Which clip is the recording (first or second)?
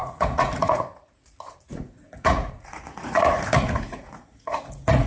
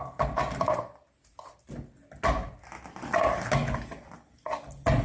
second